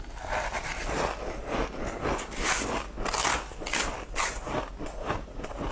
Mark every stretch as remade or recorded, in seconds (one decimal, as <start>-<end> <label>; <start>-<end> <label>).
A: 0.0-5.7 recorded